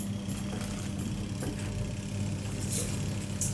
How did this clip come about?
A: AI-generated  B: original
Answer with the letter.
B